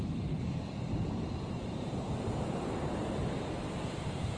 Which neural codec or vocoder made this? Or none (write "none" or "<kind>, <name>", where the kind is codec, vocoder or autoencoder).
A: vocoder, BigVGAN v2